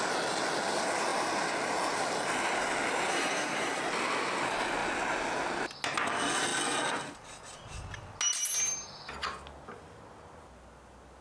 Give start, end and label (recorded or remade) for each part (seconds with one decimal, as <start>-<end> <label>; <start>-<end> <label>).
0.0-3.1 recorded; 3.1-3.8 remade; 3.8-11.2 recorded